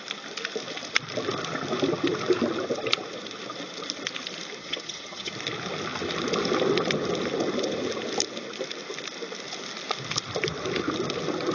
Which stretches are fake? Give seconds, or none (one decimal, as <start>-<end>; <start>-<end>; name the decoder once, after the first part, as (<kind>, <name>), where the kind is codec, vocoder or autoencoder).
4.6-5.3 (vocoder, HiFi-GAN)